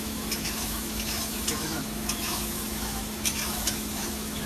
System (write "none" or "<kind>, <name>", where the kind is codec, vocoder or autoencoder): autoencoder, DAC-VAE